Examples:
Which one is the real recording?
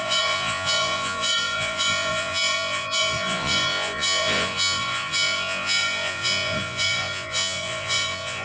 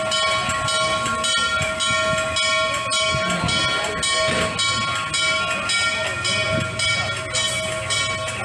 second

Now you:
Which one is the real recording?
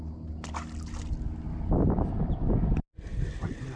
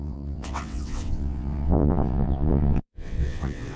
first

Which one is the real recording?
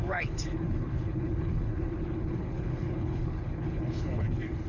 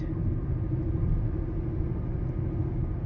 second